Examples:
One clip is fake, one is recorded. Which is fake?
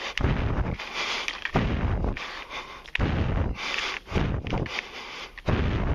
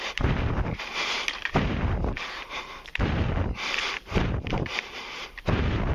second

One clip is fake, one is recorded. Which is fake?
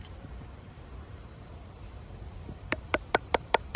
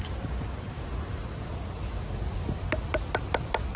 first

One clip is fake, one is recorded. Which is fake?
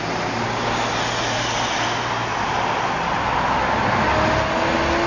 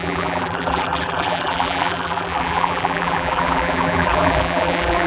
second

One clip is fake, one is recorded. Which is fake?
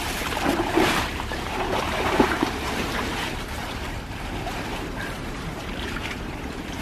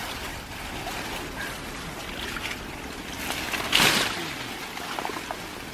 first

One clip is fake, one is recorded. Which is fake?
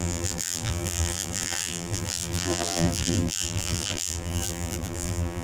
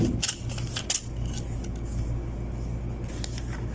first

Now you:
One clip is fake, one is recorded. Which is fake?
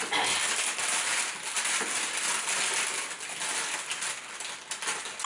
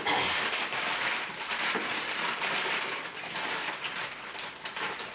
second